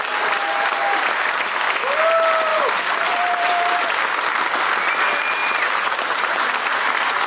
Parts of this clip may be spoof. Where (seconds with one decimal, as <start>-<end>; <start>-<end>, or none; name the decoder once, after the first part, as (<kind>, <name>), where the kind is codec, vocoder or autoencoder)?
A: 0.8-1.4 (vocoder, BigVGAN v2); 2.5-3.9; 5.4-6.3